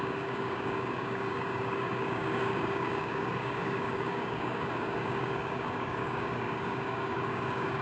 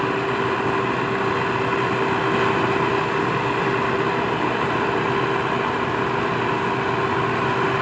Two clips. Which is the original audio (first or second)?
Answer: second